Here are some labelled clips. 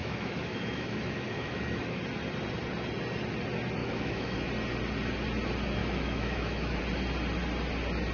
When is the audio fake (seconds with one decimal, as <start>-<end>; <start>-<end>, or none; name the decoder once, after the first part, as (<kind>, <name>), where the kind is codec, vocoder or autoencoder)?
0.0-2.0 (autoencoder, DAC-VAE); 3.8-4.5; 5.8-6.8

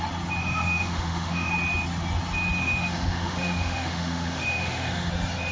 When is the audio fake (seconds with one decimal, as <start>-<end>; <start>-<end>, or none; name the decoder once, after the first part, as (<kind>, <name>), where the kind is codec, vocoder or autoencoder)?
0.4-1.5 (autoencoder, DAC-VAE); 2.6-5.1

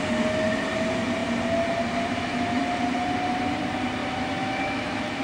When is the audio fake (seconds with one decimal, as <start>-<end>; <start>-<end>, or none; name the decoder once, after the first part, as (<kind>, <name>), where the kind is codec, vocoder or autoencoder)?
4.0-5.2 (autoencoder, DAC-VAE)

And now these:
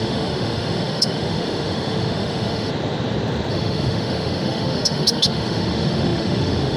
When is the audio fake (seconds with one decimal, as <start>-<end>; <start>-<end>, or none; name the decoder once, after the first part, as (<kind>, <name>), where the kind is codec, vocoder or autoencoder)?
0.0-2.7 (autoencoder, DAC-VAE); 3.5-6.8

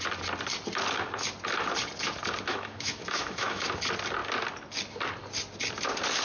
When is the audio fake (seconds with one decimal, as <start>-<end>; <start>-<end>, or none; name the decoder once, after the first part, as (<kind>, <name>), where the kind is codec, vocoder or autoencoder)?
2.5-3.6 (autoencoder, DAC-VAE)

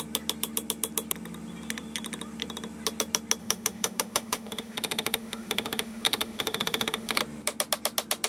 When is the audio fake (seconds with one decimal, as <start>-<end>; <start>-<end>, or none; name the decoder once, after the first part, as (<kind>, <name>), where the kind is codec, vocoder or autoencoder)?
3.4-7.2 (autoencoder, DAC-VAE)

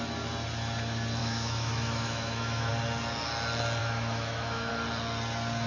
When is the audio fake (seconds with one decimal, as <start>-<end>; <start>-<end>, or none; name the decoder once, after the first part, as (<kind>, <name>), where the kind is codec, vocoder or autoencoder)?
1.2-2.7 (autoencoder, DAC-VAE); 3.8-4.7

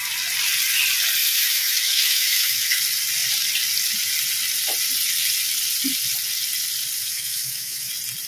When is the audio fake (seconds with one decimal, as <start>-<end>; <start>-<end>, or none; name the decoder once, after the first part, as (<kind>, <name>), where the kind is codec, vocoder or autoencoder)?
1.2-2.8 (autoencoder, DAC-VAE); 7.0-7.9